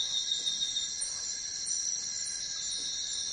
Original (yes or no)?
yes